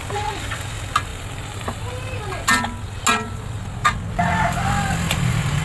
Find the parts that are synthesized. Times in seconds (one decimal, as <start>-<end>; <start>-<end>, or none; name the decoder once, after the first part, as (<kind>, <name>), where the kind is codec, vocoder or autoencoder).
1.1-1.8 (vocoder, BigVGAN v2); 3.8-5.6